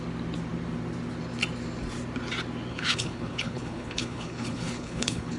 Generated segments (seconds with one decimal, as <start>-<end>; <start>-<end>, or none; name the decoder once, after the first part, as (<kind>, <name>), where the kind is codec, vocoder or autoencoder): 2.7-5.4 (codec, HILCodec)